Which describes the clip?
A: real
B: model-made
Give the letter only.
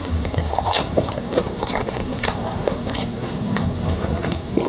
B